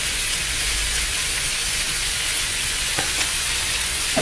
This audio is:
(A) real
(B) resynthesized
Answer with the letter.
B